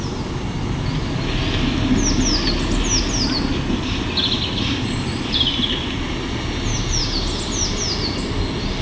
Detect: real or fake real